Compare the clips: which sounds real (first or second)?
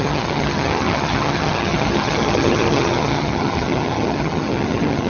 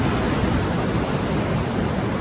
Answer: second